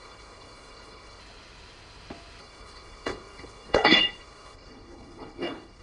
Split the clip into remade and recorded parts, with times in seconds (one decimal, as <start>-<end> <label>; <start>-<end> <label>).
0.0-1.2 remade; 1.2-2.4 recorded; 2.4-5.8 remade